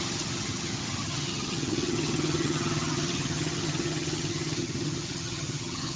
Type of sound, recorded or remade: remade